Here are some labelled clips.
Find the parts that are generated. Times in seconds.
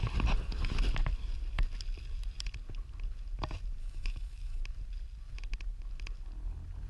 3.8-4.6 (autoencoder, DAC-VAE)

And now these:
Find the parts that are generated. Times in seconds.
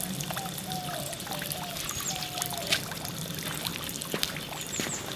3.7-4.3 (vocoder, BigVGAN v2)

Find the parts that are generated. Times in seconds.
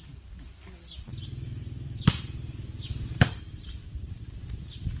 1.1-2.1 (vocoder, BigVGAN v2); 2.9-3.4; 3.8-4.3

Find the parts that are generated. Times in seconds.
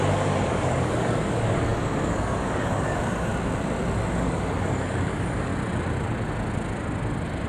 0.0-3.3 (codec, DAC); 4.1-5.5